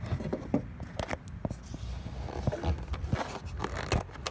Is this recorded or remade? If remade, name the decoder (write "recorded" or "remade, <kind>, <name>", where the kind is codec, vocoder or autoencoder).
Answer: recorded